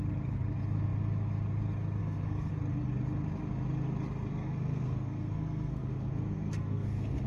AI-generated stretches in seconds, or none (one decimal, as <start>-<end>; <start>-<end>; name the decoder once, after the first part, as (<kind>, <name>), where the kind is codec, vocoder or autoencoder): 2.0-2.5 (codec, SNAC); 4.3-7.3